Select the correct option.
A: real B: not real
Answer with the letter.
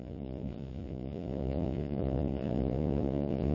B